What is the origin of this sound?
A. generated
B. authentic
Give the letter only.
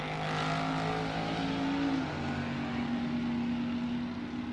B